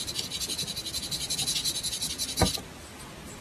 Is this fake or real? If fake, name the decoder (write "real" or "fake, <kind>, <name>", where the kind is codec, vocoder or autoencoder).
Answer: real